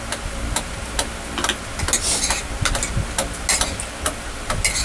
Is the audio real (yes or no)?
yes